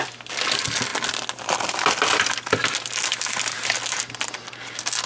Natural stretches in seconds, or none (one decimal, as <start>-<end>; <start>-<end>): 0.0-5.1